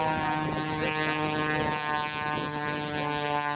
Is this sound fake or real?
real